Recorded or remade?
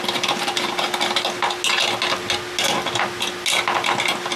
recorded